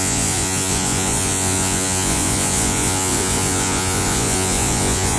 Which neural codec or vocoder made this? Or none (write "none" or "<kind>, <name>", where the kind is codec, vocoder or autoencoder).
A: vocoder, Vocos